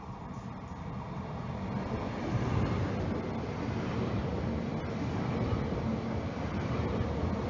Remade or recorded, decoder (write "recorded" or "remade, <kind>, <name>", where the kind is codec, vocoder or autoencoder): recorded